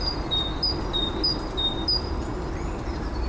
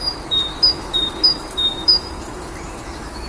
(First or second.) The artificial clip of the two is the second